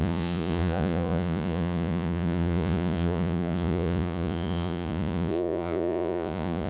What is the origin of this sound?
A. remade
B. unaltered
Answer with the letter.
A